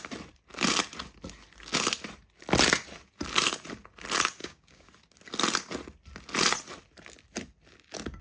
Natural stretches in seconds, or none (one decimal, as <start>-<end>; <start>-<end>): 0.0-4.4; 4.9-8.2

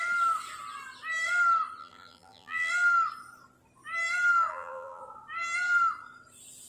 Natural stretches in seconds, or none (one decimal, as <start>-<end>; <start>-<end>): 0.0-1.8; 2.7-4.5; 5.0-6.7

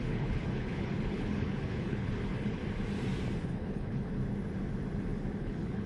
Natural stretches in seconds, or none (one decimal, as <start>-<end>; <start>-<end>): 2.6-3.4; 4.2-5.4

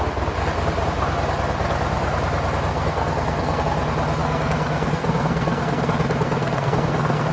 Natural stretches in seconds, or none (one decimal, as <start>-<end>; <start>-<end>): 0.0-2.7; 3.6-4.2

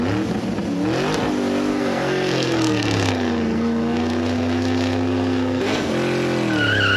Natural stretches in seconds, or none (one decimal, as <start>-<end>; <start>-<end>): 0.0-1.7; 5.9-7.0

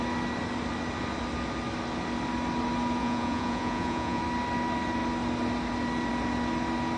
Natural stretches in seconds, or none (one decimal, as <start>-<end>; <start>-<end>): 0.0-3.0; 4.2-7.0